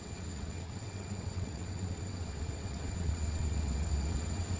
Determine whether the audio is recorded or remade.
remade